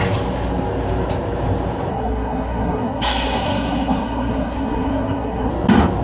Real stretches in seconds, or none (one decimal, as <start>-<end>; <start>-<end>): 0.0-1.9; 5.5-6.0